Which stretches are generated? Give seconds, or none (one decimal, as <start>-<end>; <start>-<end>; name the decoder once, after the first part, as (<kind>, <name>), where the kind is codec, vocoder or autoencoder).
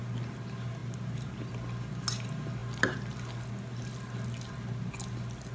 none